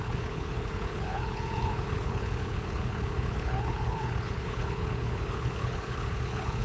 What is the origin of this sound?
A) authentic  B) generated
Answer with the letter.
B